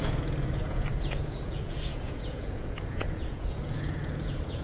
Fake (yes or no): yes